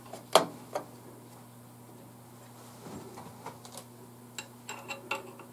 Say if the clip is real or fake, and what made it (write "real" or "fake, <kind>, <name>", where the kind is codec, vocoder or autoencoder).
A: real